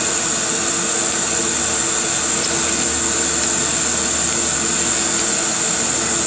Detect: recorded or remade recorded